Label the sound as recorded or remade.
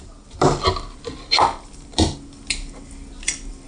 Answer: recorded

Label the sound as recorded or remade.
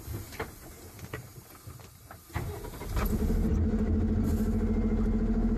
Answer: recorded